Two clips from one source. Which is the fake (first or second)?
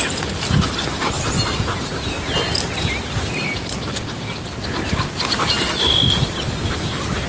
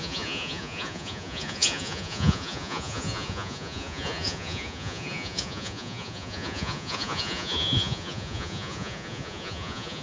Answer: second